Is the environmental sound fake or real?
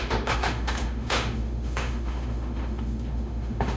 fake